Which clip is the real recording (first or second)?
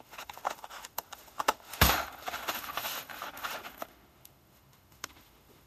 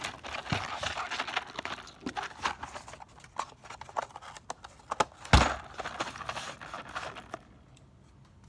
second